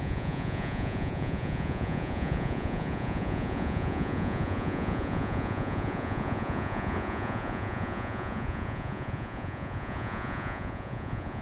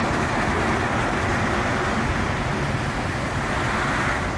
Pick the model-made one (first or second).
first